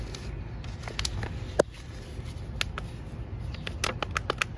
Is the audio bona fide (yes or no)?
yes